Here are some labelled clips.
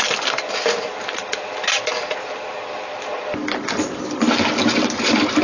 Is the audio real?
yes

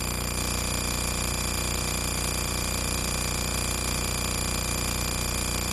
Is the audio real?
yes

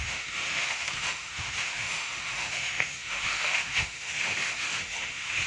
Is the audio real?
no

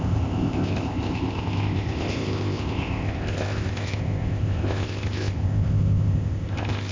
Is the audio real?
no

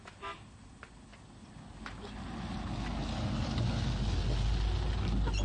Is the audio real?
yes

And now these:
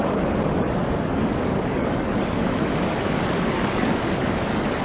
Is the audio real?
no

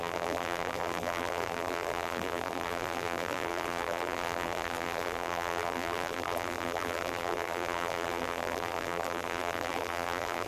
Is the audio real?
no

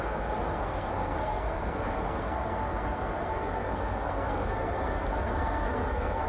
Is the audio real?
no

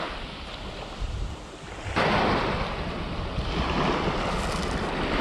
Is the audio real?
yes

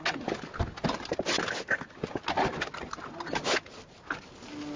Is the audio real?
yes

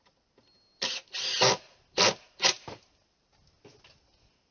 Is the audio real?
yes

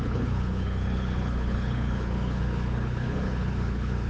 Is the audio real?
no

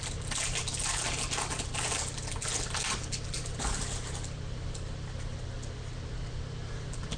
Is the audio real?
yes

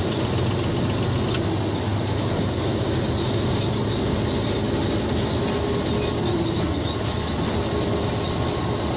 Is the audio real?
yes